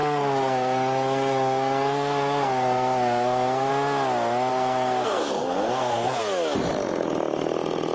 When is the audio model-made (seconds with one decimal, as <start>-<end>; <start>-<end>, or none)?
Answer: 0.0-3.7; 4.5-6.2